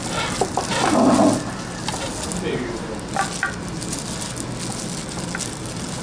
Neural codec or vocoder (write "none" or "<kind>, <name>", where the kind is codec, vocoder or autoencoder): none